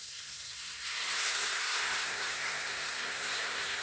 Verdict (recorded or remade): remade